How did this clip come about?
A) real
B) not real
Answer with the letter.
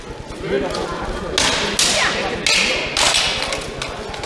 A